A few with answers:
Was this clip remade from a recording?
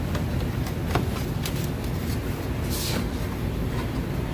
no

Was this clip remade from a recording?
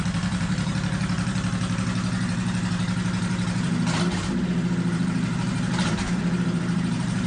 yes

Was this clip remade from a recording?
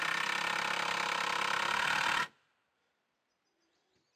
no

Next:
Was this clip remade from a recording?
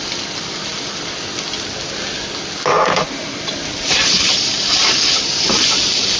no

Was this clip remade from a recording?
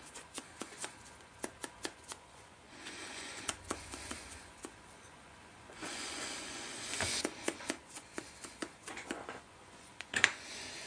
yes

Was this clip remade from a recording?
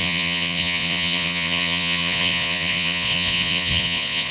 yes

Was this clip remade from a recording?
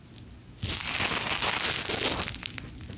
no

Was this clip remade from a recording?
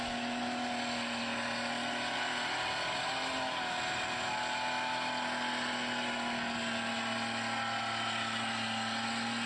no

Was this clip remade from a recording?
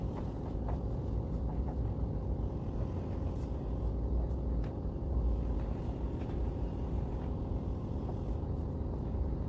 no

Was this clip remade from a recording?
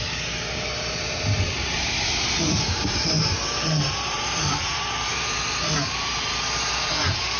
yes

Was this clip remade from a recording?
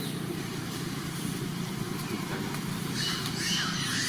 yes